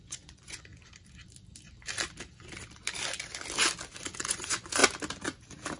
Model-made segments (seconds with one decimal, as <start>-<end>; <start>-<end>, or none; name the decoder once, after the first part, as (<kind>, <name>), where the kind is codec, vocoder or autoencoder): 0.0-0.7 (vocoder, Vocos); 4.2-4.8